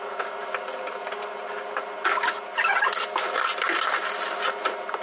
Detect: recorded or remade recorded